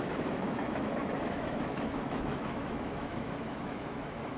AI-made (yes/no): yes